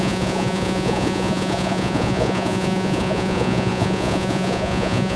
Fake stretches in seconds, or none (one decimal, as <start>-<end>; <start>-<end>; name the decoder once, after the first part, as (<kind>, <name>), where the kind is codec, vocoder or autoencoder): 0.0-5.2 (vocoder, Vocos)